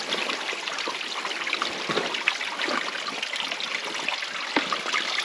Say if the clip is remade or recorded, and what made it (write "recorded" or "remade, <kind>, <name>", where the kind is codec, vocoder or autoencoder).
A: recorded